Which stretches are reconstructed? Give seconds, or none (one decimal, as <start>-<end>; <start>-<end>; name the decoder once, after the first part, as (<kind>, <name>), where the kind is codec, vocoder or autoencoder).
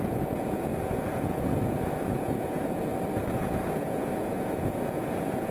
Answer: 0.0-2.9 (vocoder, Vocos); 3.4-5.5